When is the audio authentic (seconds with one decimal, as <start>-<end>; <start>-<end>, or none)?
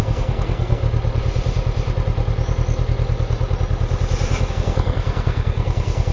0.8-4.5